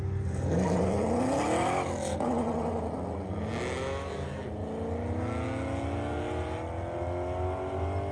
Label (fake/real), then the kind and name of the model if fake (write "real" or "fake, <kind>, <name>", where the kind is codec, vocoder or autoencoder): real